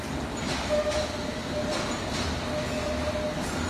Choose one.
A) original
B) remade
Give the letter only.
A